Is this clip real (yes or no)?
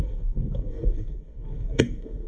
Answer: no